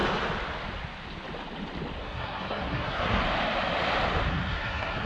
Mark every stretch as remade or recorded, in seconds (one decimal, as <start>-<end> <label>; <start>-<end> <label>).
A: 0.0-2.0 recorded; 2.0-3.2 remade; 3.2-4.3 recorded; 4.3-5.1 remade